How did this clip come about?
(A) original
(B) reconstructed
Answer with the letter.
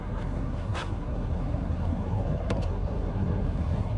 B